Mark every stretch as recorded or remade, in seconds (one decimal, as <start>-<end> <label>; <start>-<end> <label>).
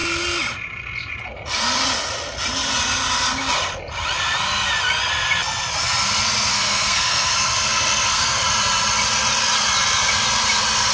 0.0-6.5 recorded; 6.5-8.4 remade; 8.4-10.9 recorded